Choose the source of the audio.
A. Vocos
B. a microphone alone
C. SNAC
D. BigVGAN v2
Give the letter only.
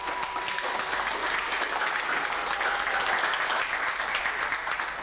B